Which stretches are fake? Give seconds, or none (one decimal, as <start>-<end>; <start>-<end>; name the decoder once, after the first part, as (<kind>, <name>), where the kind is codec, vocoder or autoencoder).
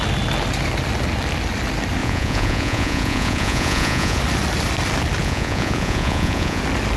2.0-4.2 (vocoder, Vocos); 5.2-6.6